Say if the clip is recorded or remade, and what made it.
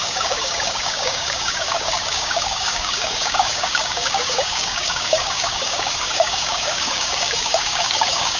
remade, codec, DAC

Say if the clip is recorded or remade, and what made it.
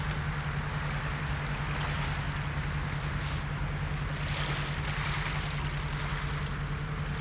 recorded